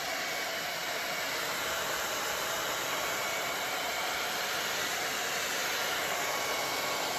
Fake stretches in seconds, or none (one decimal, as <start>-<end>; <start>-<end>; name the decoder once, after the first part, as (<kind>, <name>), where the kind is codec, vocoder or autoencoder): 0.0-7.2 (vocoder, BigVGAN v2)